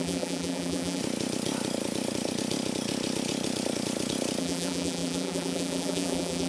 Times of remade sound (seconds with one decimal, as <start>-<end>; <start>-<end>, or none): 0.0-1.0; 4.4-6.5

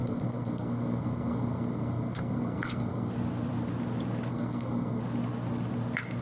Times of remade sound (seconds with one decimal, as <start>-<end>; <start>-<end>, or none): 0.0-3.1; 4.3-5.0

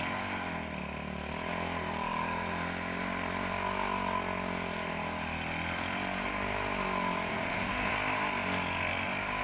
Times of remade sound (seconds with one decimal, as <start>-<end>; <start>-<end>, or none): 7.3-7.9

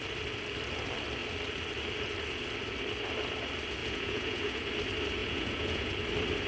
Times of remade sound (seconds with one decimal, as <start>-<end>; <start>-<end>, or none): 3.8-4.7; 5.2-5.9

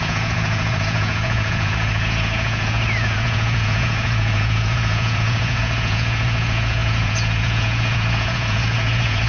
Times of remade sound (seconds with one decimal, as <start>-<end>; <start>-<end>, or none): 0.0-9.3

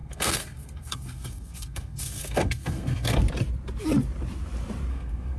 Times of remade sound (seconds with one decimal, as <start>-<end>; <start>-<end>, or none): 0.0-3.2; 4.9-5.4

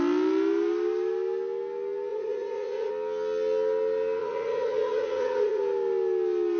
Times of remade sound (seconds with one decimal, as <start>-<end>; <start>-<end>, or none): 2.1-2.9; 4.2-5.6